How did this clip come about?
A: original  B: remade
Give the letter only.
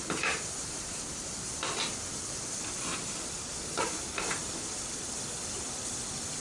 B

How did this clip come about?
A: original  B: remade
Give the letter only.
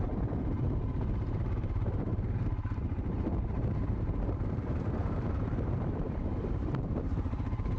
B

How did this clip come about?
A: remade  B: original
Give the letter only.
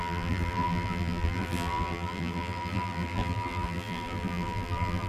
A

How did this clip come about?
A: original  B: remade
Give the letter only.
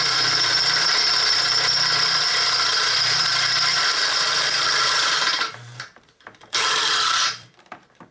B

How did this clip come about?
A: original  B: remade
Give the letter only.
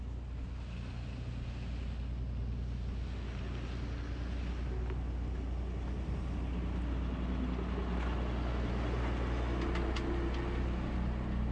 A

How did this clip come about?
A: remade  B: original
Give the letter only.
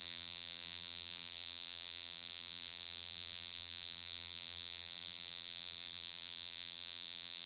A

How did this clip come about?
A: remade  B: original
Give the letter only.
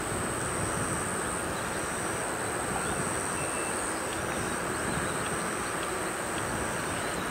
B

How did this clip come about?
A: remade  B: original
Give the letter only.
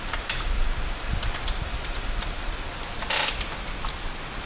B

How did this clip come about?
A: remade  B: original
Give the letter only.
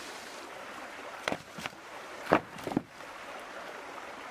A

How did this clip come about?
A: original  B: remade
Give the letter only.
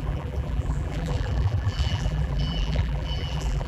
B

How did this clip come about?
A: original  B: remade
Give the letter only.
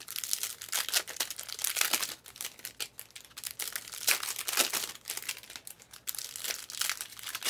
A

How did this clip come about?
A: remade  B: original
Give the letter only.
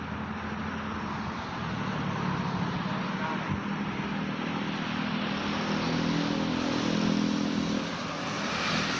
B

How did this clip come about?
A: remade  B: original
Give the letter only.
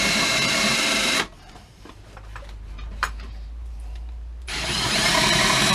A